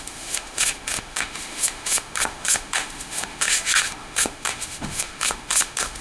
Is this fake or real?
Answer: fake